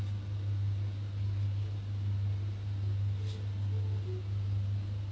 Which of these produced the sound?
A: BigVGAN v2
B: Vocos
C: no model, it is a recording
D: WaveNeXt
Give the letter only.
C